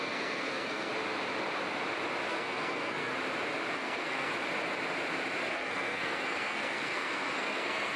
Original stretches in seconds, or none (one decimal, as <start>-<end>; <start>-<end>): 0.9-2.3; 3.1-3.7; 4.3-5.5